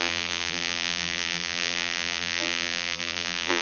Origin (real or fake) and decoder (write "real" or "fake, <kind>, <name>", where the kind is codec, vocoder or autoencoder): fake, vocoder, BigVGAN v2